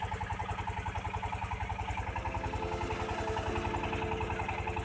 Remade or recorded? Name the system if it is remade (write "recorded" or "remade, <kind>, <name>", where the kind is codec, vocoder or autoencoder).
recorded